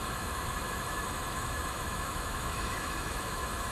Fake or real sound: fake